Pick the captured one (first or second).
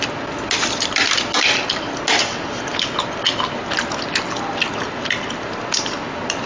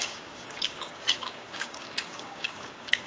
first